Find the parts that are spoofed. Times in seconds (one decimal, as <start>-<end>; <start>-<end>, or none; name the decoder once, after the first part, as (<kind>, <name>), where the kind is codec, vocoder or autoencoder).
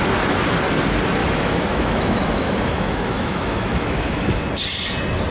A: 1.2-4.4 (autoencoder, DAC-VAE)